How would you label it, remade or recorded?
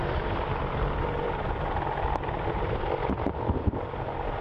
recorded